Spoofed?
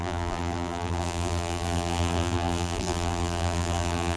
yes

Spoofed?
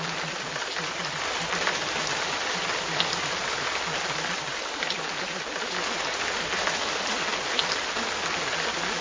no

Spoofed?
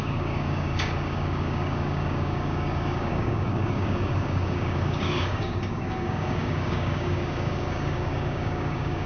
yes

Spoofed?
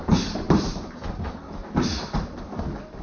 no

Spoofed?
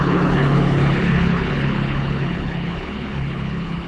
yes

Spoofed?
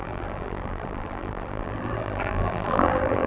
yes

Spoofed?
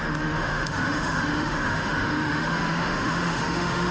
yes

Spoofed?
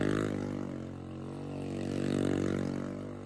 no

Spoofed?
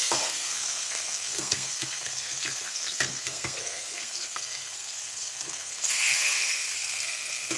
yes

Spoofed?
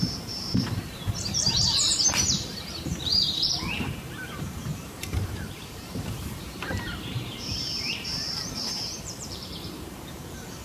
yes